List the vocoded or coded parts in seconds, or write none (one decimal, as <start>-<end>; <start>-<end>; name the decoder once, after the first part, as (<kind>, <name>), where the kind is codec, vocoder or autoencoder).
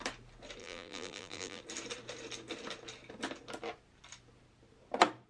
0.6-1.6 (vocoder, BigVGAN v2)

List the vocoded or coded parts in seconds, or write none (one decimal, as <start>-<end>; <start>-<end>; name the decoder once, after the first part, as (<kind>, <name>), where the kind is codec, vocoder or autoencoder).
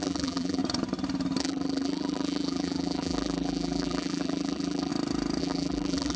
0.0-0.6 (vocoder, BigVGAN v2); 1.4-4.9; 5.4-6.2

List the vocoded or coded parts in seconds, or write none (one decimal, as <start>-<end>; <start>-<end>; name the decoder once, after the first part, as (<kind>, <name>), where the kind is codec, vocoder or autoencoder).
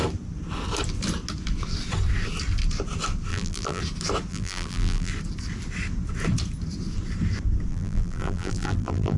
3.3-3.8 (vocoder, BigVGAN v2); 4.3-5.1; 7.7-9.2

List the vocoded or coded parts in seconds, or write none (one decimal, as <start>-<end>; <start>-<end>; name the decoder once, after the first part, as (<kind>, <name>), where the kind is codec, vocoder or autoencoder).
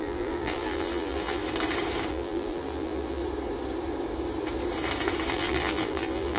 0.0-1.4 (vocoder, BigVGAN v2); 2.1-3.2; 5.3-6.4